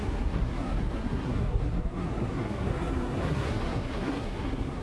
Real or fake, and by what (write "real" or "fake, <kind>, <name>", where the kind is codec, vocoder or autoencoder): fake, codec, SNAC